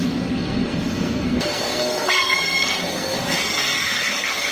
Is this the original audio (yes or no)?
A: no